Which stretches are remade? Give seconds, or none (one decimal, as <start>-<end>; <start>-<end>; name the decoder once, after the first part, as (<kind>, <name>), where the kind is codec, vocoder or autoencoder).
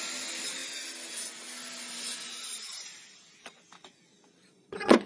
4.4-5.1 (vocoder, Vocos)